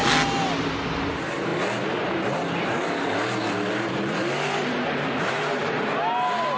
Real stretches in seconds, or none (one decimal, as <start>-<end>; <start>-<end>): 0.0-0.6; 1.5-2.0; 2.4-3.7